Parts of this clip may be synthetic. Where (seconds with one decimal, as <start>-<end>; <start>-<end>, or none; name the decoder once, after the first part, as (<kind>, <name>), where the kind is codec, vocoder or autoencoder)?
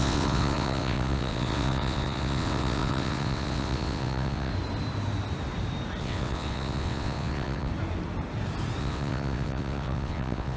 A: 0.0-4.5 (vocoder, WaveNeXt); 6.0-7.7; 8.8-10.6